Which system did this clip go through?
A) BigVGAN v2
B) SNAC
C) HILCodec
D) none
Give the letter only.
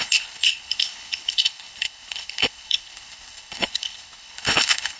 C